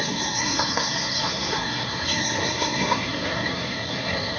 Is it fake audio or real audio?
fake